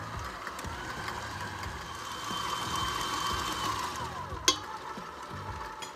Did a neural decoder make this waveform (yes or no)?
no